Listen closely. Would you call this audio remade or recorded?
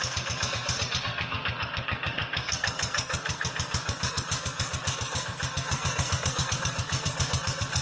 remade